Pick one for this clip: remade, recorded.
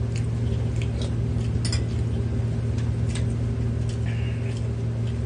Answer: recorded